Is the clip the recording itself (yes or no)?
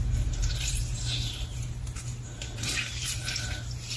no